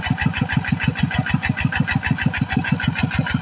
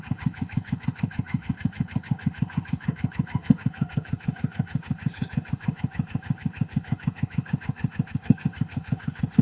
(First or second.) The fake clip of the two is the second